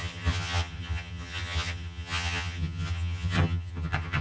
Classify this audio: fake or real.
fake